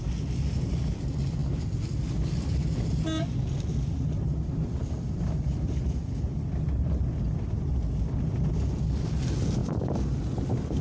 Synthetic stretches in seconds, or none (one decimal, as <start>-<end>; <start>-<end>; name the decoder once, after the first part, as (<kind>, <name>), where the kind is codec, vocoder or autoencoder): none